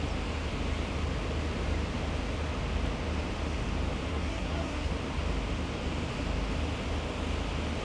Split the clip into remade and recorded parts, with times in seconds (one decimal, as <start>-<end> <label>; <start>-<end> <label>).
0.0-4.1 recorded; 4.1-4.9 remade; 4.9-7.8 recorded